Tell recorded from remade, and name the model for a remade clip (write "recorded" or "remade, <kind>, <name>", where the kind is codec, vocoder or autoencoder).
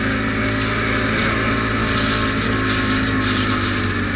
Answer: recorded